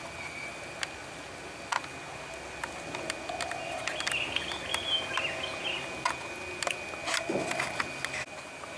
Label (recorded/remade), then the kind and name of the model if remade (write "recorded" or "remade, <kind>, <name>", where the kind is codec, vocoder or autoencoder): recorded